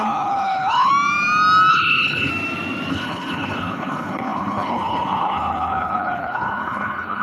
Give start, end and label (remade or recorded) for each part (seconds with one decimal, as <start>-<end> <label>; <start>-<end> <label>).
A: 0.0-0.9 remade; 0.9-1.7 recorded; 1.7-2.3 remade; 2.3-2.9 recorded; 2.9-7.2 remade